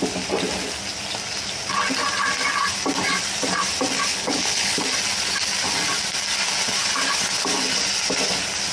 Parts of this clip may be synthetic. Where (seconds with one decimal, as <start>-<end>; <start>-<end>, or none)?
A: 4.1-4.8